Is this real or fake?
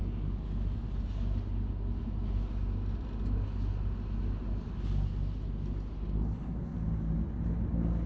real